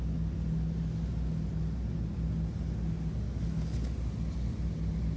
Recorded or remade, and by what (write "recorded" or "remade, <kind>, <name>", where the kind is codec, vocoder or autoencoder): recorded